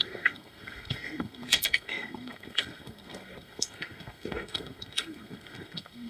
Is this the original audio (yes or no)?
no